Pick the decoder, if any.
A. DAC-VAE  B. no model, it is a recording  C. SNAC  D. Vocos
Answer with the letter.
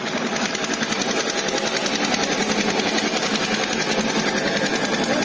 B